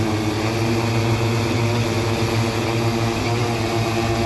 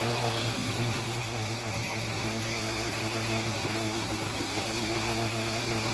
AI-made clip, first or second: second